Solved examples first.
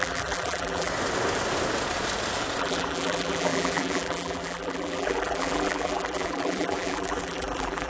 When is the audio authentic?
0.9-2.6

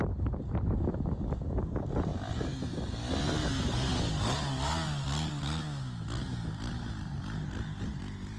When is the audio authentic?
0.0-8.4

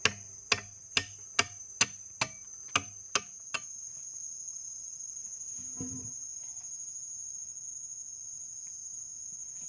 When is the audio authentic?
0.0-9.7